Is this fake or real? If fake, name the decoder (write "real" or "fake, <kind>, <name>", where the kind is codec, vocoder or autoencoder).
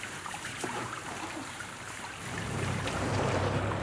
fake, vocoder, BigVGAN v2